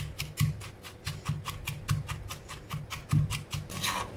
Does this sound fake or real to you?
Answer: real